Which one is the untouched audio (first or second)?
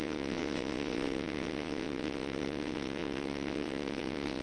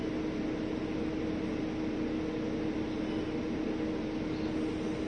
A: second